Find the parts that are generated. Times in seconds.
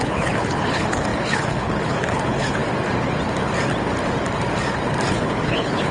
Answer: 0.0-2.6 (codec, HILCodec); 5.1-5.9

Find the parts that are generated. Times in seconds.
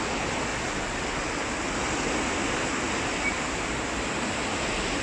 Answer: none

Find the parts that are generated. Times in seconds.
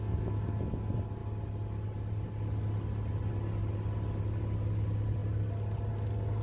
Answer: none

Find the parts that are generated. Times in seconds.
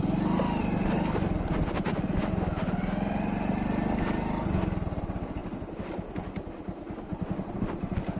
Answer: none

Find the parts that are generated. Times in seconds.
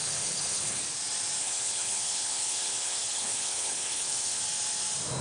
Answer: 0.0-0.8 (codec, HILCodec); 1.4-4.4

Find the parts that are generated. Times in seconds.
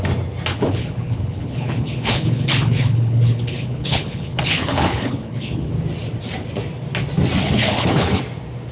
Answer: 0.5-5.7 (codec, HILCodec); 7.4-8.2